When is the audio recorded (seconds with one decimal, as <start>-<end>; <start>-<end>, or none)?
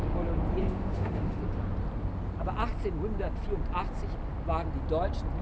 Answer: 0.0-0.6; 1.4-5.4